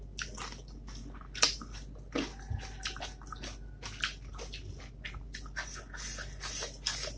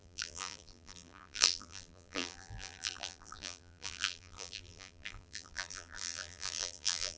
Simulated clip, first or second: second